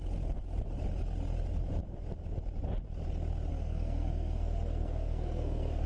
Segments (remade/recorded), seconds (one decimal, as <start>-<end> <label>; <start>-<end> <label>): 0.0-3.5 recorded; 3.5-5.9 remade